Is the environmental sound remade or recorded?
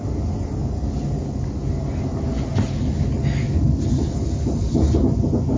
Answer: recorded